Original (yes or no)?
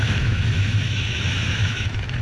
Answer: no